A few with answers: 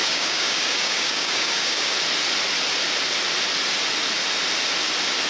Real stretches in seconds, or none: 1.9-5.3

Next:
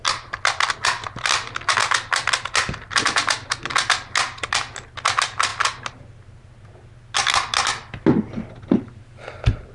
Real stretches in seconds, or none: 0.0-9.7

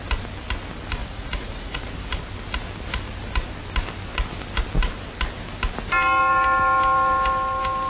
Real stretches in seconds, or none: 0.0-1.0; 1.9-7.9

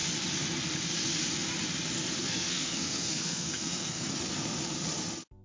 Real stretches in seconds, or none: 0.0-2.2; 4.1-5.4

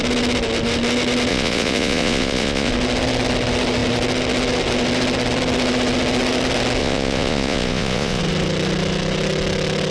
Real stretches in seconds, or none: 0.0-1.3; 2.7-6.8; 8.2-9.9

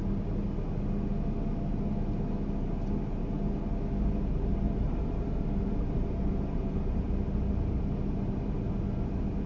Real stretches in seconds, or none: 0.0-4.5; 7.1-9.5

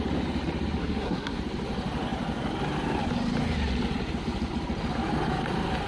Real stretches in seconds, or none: 0.0-0.8; 1.4-5.9